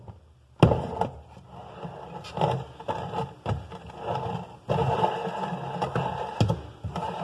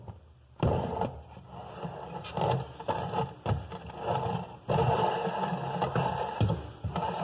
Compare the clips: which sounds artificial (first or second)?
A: second